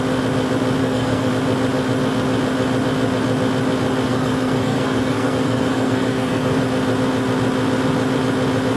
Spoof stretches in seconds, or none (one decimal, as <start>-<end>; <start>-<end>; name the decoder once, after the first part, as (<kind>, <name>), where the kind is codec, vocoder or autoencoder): 0.8-1.3 (codec, SNAC); 4.1-6.6